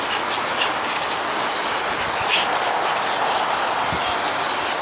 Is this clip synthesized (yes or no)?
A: no